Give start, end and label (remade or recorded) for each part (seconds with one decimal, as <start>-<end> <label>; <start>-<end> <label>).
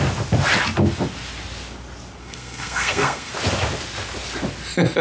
0.0-2.2 recorded; 2.2-3.3 remade; 3.3-5.0 recorded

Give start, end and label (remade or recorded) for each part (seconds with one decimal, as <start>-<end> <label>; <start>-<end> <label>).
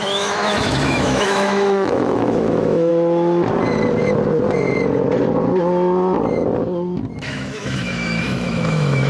0.0-2.9 remade; 2.9-7.2 recorded; 7.2-9.1 remade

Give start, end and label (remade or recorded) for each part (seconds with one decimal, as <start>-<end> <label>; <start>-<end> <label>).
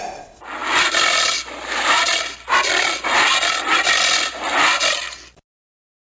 0.0-6.2 recorded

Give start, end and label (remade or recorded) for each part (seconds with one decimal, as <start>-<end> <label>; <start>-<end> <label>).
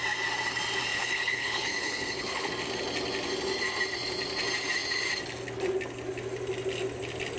0.0-0.9 recorded; 0.9-2.5 remade; 2.5-7.4 recorded